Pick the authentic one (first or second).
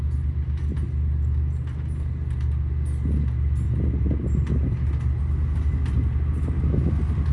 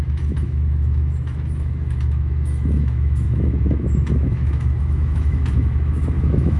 first